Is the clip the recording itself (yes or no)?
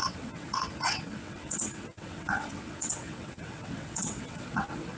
no